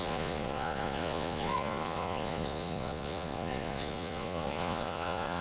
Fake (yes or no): yes